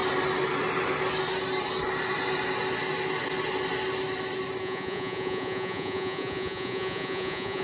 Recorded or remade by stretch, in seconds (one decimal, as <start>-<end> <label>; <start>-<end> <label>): 0.0-4.6 recorded; 4.6-7.6 remade